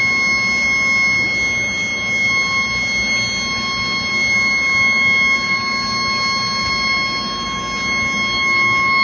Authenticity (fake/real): real